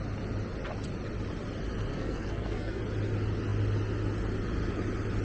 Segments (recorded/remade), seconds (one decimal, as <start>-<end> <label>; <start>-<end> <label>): 0.0-1.9 recorded; 1.9-2.8 remade; 2.8-5.2 recorded